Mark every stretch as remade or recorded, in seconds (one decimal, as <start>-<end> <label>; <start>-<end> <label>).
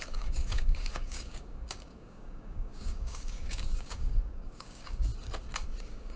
0.0-5.1 remade; 5.1-5.8 recorded; 5.8-6.2 remade